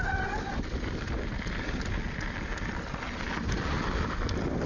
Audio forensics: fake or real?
real